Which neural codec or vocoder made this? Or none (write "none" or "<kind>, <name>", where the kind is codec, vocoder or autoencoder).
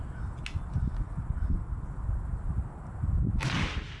none